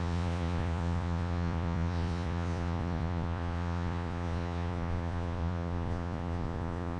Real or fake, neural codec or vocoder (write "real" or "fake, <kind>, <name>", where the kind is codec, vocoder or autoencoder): fake, vocoder, Vocos